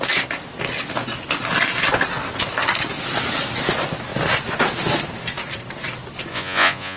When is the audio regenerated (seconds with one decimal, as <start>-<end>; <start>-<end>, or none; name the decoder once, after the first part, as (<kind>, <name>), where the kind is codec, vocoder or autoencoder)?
6.3-7.0 (vocoder, Vocos)